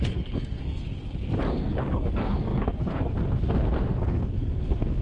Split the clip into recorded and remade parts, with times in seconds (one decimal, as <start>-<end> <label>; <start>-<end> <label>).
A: 0.0-0.8 remade; 0.8-1.5 recorded; 1.5-5.0 remade

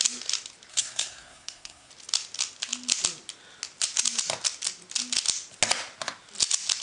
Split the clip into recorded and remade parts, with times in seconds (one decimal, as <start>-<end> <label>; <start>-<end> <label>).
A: 0.0-0.7 recorded; 0.7-1.9 remade; 1.9-6.8 recorded

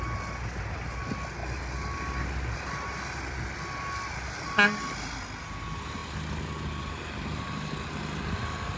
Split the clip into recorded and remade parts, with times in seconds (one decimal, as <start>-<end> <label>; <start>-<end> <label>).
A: 0.0-8.8 recorded

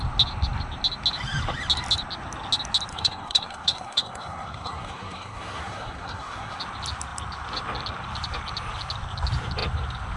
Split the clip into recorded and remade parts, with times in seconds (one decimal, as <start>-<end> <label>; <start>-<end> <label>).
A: 0.0-2.9 recorded; 2.9-6.6 remade; 6.6-10.2 recorded

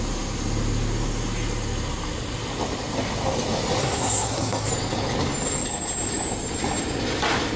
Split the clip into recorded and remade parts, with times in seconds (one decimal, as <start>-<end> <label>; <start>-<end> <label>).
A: 0.0-3.8 recorded; 3.8-4.7 remade; 4.7-7.6 recorded

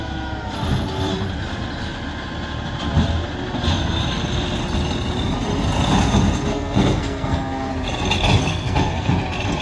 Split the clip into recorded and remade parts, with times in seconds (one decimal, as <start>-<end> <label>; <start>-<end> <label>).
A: 0.0-6.5 recorded; 6.5-7.7 remade; 7.7-8.4 recorded; 8.4-9.1 remade; 9.1-9.6 recorded

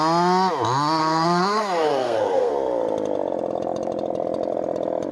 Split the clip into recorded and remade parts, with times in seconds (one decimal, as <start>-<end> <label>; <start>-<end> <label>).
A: 0.0-1.0 recorded; 1.0-2.5 remade; 2.5-5.1 recorded